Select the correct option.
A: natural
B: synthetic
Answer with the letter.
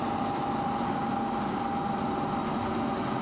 A